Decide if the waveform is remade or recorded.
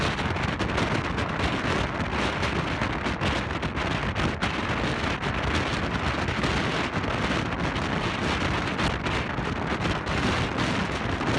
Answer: recorded